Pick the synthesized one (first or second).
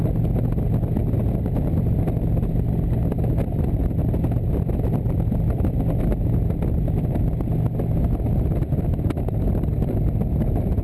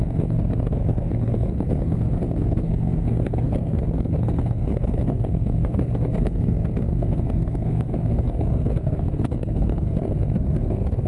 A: second